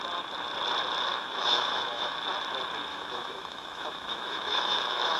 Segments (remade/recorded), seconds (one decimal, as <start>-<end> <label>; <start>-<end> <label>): 0.0-1.1 recorded; 1.1-2.2 remade; 2.2-2.9 recorded; 2.9-5.2 remade